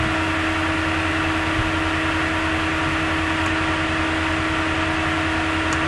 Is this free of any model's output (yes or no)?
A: yes